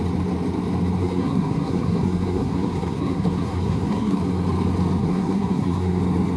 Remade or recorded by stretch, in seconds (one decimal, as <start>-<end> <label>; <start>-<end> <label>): 0.0-1.0 recorded; 1.0-4.2 remade; 4.2-5.0 recorded; 5.0-6.0 remade; 6.0-6.4 recorded